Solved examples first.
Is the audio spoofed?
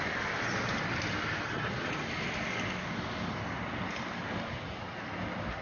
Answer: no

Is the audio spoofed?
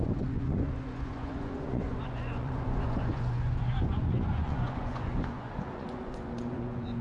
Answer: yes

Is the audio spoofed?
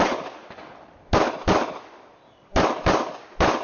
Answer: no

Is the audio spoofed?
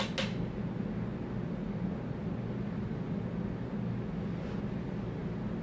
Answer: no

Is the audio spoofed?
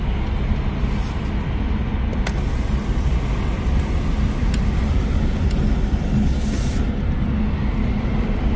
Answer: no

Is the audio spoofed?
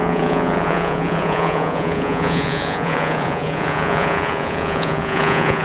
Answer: yes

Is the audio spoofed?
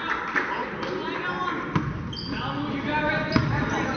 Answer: no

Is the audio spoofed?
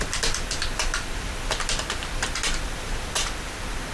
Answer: no